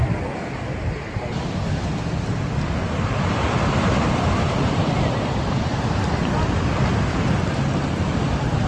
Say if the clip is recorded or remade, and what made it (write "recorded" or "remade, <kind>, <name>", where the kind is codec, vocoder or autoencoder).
recorded